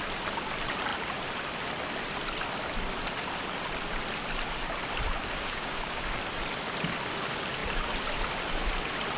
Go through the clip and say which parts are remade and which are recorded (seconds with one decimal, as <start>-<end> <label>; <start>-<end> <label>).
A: 0.0-5.2 recorded; 5.2-6.2 remade; 6.2-9.2 recorded